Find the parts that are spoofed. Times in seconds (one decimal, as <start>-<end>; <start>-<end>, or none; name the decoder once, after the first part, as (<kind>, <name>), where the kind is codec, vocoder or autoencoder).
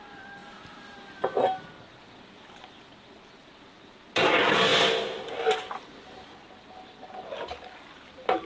none